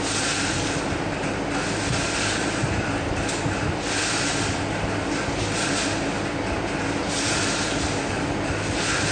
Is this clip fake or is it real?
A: real